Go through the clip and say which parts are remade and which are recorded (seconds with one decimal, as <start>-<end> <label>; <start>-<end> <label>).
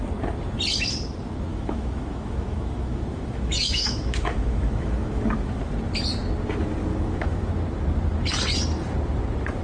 0.0-1.5 recorded; 1.5-5.7 remade; 5.7-6.9 recorded; 6.9-7.5 remade; 7.5-9.6 recorded